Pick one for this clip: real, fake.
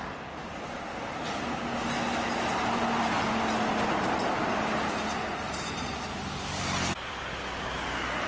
real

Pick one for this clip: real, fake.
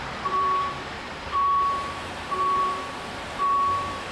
fake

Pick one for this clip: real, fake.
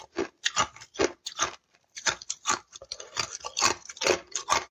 real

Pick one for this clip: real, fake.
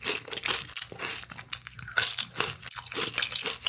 real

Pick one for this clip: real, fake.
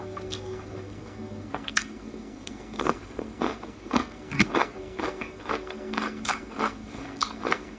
fake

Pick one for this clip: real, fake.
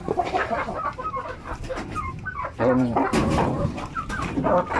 fake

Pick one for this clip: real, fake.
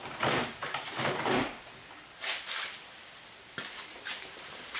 real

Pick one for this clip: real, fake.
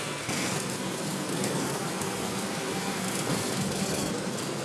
fake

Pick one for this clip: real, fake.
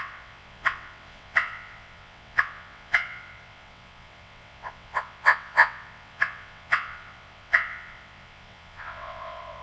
fake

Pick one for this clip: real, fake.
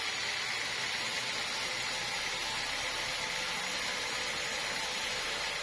real